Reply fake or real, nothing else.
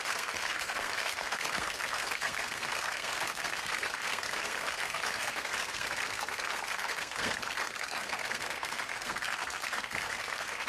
fake